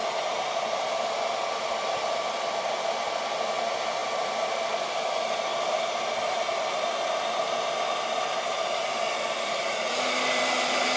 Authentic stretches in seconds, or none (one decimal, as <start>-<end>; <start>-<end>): 0.0-11.0